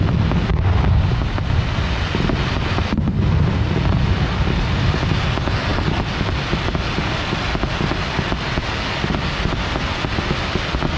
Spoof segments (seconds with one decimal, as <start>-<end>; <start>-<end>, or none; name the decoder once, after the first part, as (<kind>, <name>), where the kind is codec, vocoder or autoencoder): 0.5-1.3 (codec, DAC)